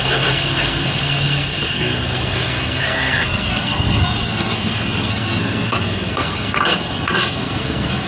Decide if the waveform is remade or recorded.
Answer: remade